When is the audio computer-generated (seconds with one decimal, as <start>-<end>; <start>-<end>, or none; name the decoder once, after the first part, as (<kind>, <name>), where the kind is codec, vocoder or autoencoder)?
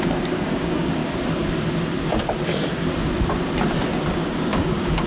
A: 0.0-1.0 (codec, DAC); 4.1-5.1